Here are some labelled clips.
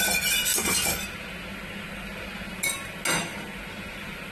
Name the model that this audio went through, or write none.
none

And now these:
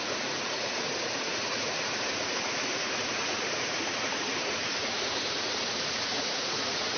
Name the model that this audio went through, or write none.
vocoder, Vocos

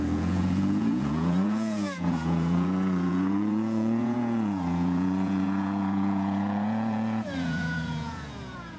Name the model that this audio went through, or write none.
vocoder, Vocos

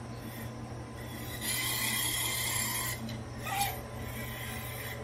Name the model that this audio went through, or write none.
none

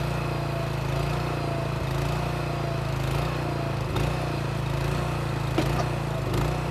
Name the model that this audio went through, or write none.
none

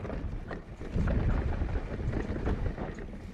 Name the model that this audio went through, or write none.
none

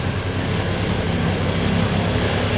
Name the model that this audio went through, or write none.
none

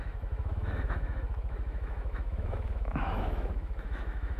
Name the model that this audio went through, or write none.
autoencoder, DAC-VAE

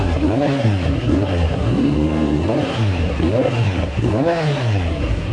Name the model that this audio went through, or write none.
codec, SNAC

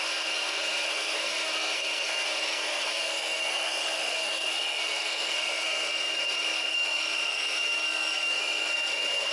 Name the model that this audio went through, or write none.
codec, SNAC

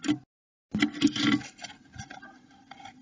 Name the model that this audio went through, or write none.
none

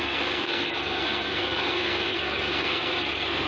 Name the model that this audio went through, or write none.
codec, SNAC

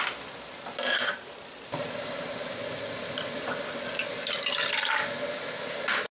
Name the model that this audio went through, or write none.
none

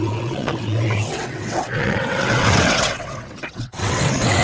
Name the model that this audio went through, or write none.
vocoder, WaveNeXt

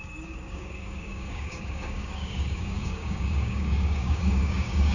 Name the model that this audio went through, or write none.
codec, DAC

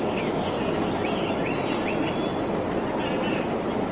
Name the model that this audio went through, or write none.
none